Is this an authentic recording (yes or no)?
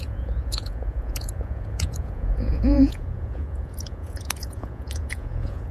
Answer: no